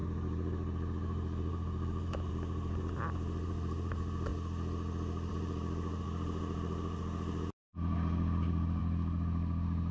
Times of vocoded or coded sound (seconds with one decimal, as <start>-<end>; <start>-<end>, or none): 0.0-4.3; 5.3-8.8